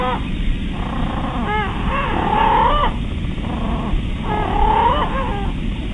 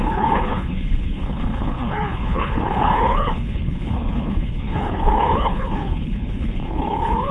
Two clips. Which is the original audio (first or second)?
first